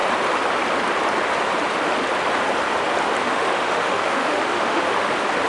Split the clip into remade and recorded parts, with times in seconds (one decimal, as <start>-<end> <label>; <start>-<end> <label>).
0.0-3.2 recorded; 3.2-5.1 remade; 5.1-5.5 recorded